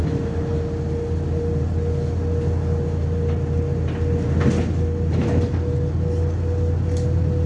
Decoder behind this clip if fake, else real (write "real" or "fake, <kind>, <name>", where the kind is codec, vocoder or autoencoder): real